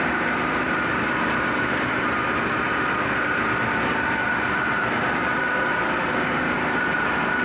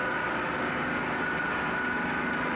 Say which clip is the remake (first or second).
first